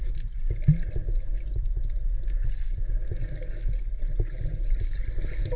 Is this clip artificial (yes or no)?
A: no